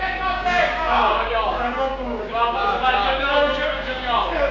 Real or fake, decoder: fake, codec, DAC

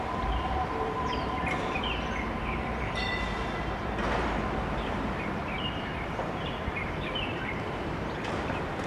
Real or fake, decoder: fake, vocoder, BigVGAN v2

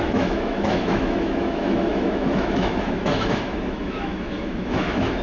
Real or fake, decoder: fake, autoencoder, DAC-VAE